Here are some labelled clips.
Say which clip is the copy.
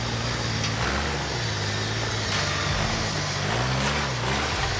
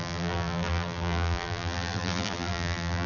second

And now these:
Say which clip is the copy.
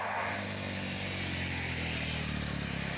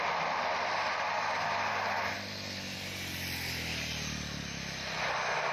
second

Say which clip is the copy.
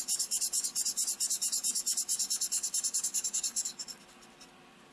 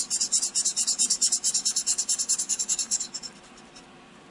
second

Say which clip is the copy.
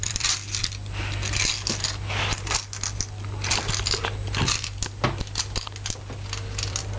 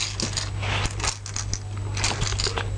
first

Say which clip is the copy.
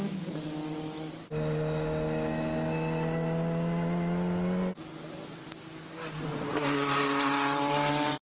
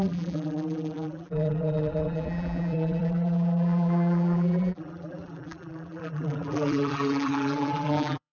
second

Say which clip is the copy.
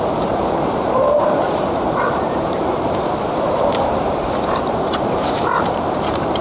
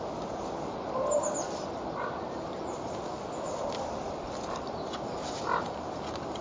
first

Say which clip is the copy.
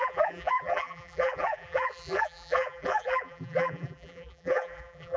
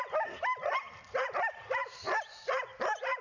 first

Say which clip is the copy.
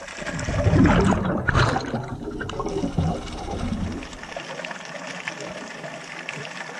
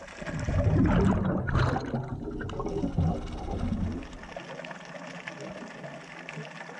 first